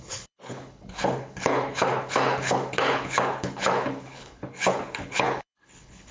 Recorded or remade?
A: remade